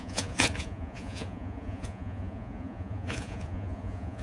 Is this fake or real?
fake